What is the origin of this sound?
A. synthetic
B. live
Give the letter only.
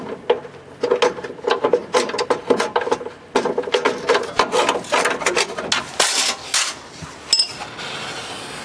B